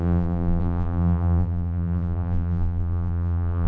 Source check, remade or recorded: remade